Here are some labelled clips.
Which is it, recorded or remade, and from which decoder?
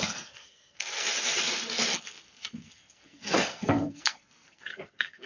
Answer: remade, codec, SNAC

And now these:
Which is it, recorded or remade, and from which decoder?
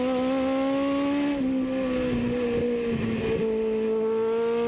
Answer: recorded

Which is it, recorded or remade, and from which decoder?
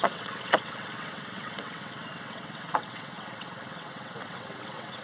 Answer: remade, vocoder, WaveNeXt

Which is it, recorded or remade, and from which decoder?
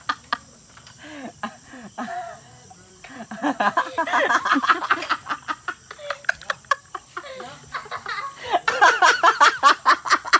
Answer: remade, vocoder, BigVGAN v2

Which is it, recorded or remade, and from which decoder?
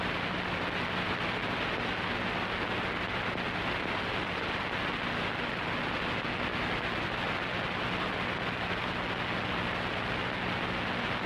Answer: recorded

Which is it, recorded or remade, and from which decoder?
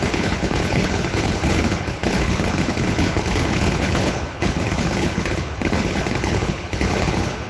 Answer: remade, codec, HILCodec